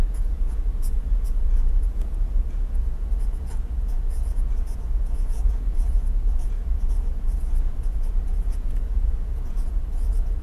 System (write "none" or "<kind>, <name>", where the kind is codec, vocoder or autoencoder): vocoder, Vocos